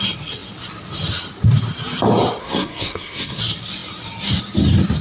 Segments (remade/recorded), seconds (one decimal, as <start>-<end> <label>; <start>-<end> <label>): 0.0-2.4 recorded; 2.4-3.4 remade; 3.4-5.0 recorded